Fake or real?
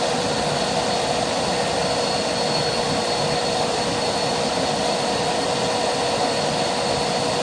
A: real